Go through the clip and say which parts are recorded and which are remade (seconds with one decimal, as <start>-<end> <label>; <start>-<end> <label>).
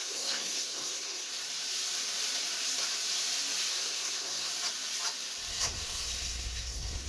0.0-1.3 remade; 1.3-3.7 recorded; 3.7-4.5 remade; 4.5-5.5 recorded; 5.5-7.1 remade